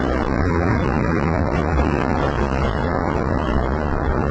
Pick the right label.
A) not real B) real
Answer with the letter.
A